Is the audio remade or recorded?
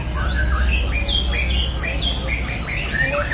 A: recorded